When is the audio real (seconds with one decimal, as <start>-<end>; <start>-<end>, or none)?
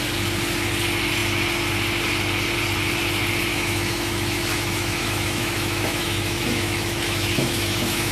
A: 0.0-3.5